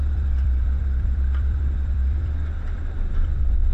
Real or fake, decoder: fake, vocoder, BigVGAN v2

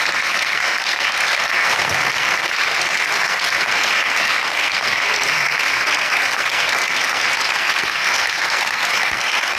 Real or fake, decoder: fake, codec, SNAC